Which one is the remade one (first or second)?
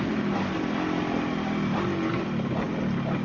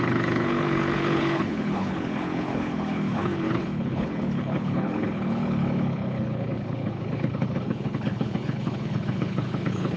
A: second